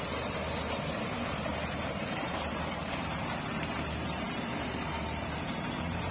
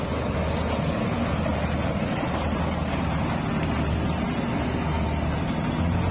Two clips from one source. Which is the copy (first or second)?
first